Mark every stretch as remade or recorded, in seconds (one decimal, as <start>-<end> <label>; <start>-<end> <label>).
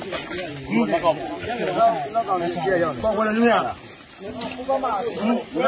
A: 0.0-5.7 recorded